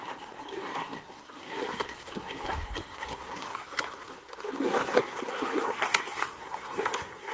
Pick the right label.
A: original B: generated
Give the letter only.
B